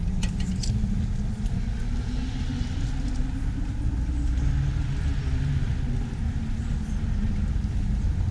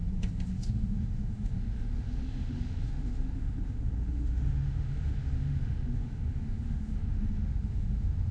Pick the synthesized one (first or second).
second